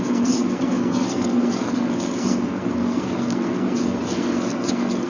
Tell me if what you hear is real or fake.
fake